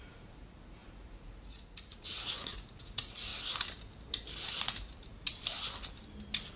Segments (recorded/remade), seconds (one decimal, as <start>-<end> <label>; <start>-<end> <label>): 0.0-3.3 remade; 3.3-4.5 recorded; 4.5-4.9 remade; 4.9-6.6 recorded